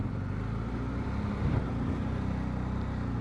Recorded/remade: recorded